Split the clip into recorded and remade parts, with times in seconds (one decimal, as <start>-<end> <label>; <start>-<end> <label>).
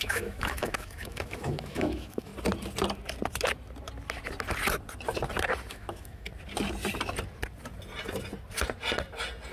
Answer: 0.0-2.3 remade; 2.3-5.7 recorded; 5.7-6.3 remade; 6.3-9.5 recorded